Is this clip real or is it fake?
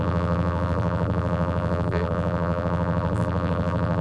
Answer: fake